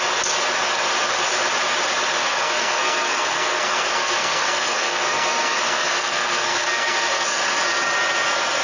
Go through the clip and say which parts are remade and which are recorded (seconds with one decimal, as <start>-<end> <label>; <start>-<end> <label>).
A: 0.0-2.2 recorded; 2.2-7.4 remade; 7.4-8.6 recorded